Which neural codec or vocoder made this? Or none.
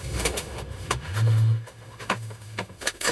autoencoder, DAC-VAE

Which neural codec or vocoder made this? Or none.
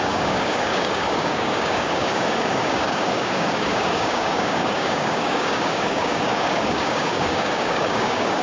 codec, DAC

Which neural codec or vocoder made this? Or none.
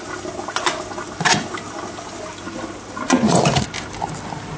none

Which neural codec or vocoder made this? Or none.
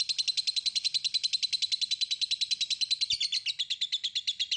none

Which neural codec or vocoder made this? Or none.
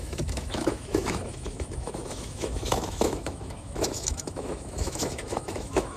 autoencoder, DAC-VAE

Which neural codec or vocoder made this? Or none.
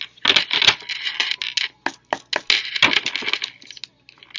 none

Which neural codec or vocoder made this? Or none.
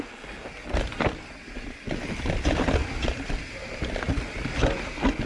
none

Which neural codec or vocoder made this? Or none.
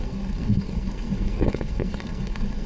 codec, SNAC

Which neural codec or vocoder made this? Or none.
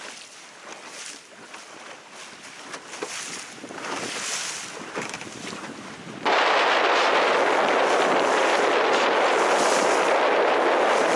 none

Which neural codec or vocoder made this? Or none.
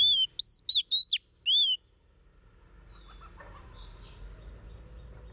none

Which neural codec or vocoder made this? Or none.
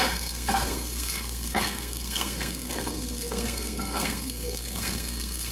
codec, SNAC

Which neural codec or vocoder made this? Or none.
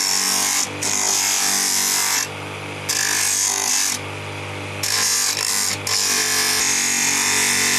none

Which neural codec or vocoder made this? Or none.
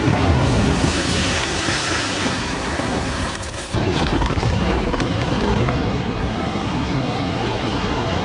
codec, SNAC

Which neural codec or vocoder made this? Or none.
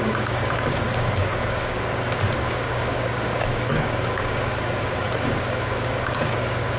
codec, DAC